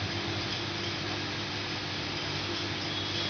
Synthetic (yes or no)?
no